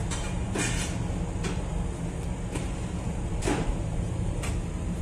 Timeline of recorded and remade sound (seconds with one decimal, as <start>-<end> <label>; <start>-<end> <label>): 0.0-0.6 remade; 0.6-2.6 recorded; 2.6-4.5 remade; 4.5-5.0 recorded